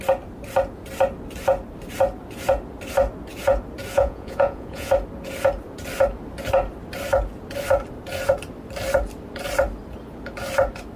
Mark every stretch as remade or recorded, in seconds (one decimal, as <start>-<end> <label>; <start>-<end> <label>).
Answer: 0.0-3.9 recorded; 3.9-4.9 remade; 4.9-11.0 recorded